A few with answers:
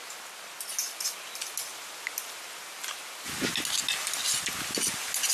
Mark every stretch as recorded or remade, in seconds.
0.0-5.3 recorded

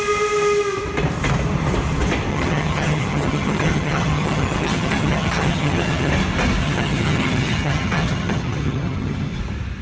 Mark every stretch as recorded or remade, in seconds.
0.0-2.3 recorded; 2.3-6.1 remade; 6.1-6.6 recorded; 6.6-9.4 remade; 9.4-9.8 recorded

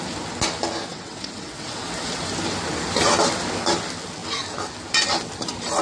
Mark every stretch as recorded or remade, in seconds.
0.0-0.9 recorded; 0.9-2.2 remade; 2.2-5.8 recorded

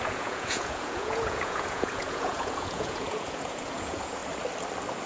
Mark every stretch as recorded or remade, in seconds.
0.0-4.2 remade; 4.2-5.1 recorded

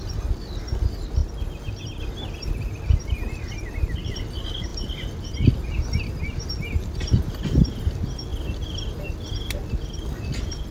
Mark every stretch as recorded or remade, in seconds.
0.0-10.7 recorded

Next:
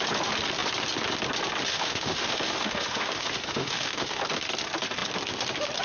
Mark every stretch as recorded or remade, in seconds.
0.0-1.7 recorded; 1.7-4.2 remade; 4.2-5.8 recorded